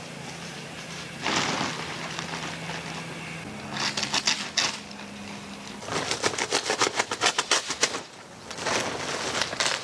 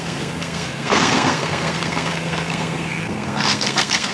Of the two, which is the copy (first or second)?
second